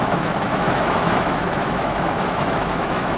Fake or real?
fake